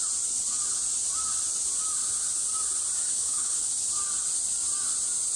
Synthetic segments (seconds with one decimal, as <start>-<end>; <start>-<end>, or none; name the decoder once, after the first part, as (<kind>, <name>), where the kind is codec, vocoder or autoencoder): 3.0-3.6 (autoencoder, DAC-VAE)